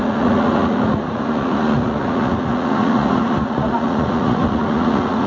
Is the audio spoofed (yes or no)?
yes